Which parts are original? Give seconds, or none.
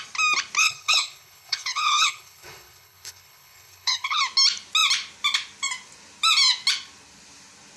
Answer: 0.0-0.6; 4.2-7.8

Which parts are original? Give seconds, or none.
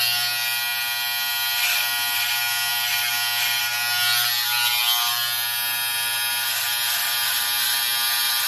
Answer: 0.0-8.5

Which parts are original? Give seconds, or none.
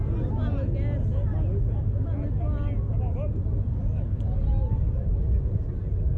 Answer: 0.0-6.2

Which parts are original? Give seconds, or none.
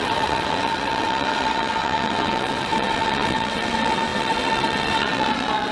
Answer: none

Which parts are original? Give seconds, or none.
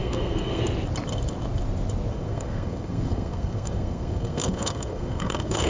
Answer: 0.6-2.1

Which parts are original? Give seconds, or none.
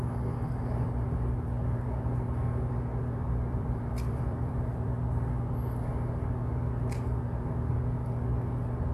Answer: 0.0-3.5; 4.9-8.9